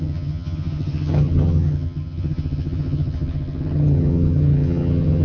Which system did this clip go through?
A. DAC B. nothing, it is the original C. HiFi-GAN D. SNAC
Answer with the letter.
C